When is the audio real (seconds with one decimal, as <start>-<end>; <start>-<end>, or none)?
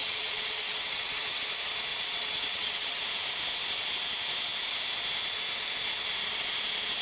1.4-1.9; 3.0-7.0